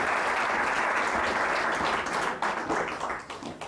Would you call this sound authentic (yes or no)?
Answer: yes